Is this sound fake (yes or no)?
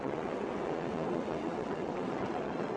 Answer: yes